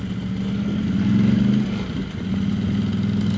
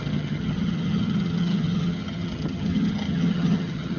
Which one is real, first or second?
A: first